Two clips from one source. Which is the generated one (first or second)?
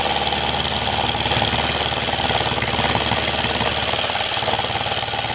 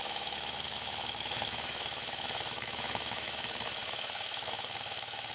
second